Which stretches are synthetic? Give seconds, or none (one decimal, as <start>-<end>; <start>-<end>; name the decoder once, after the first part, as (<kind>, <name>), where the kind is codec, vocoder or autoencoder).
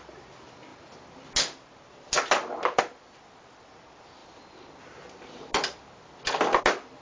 none